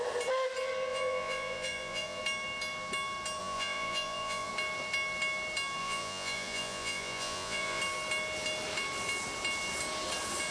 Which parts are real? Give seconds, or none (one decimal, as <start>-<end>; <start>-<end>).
0.0-0.9; 2.2-3.4; 4.5-5.8; 7.8-10.5